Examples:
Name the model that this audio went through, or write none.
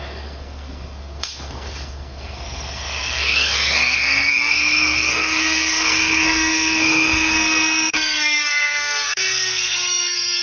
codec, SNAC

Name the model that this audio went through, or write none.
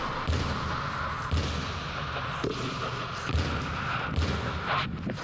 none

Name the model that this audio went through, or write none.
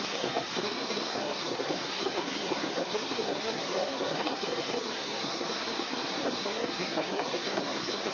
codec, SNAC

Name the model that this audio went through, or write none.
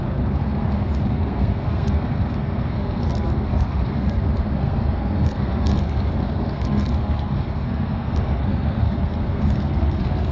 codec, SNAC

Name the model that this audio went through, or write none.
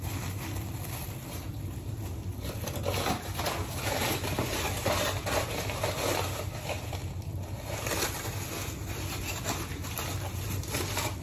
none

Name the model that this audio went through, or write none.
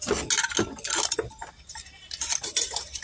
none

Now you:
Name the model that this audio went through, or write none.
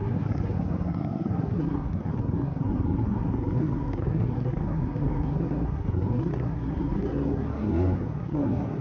codec, SNAC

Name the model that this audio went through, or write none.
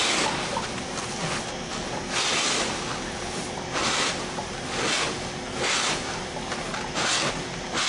none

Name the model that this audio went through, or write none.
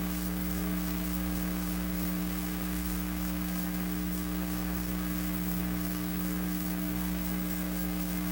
codec, SNAC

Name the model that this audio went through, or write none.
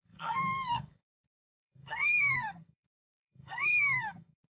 codec, SNAC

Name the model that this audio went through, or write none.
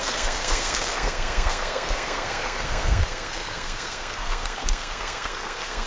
codec, SNAC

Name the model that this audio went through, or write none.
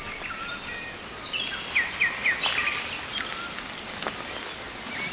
none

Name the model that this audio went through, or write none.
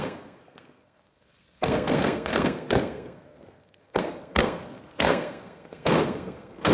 codec, SNAC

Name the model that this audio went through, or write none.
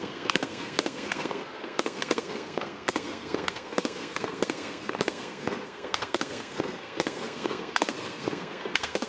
codec, SNAC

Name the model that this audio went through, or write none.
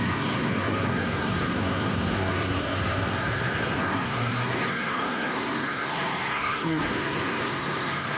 codec, SNAC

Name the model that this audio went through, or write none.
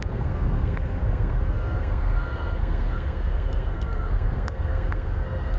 codec, SNAC